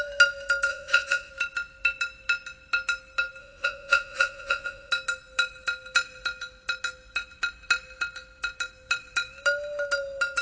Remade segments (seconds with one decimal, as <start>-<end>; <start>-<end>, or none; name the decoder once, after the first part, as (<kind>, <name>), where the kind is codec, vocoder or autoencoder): 0.7-1.3 (vocoder, Vocos); 3.4-4.9